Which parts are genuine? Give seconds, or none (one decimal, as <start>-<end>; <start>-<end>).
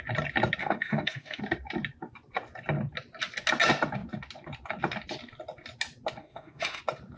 0.0-0.6; 1.4-6.2; 6.8-7.2